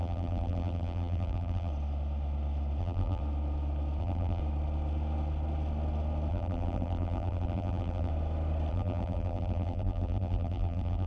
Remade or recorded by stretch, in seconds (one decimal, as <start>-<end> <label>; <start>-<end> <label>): 0.0-1.7 remade; 1.7-2.8 recorded; 2.8-3.2 remade; 3.2-4.0 recorded; 4.0-4.4 remade; 4.4-6.3 recorded; 6.3-8.1 remade; 8.1-8.7 recorded; 8.7-11.1 remade